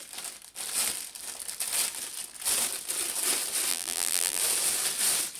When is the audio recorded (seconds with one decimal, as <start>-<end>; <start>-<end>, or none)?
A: 0.0-3.7; 4.4-5.4